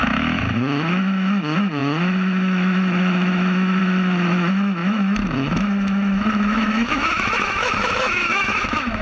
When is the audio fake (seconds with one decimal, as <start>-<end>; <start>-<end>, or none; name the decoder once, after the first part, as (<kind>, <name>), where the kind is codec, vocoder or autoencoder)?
0.0-9.0 (autoencoder, DAC-VAE)

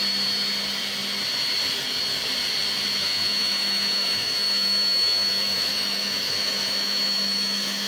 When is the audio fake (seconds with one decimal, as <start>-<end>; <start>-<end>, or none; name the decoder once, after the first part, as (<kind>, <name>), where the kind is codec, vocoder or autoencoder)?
3.0-7.9 (autoencoder, DAC-VAE)

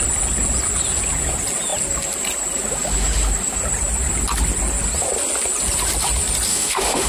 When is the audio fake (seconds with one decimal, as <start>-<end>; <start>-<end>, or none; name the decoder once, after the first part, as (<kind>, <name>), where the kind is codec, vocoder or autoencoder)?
6.5-7.1 (autoencoder, DAC-VAE)

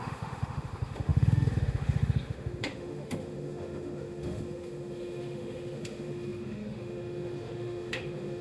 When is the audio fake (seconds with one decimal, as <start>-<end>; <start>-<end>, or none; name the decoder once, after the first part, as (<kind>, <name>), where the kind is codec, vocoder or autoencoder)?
0.0-8.4 (autoencoder, DAC-VAE)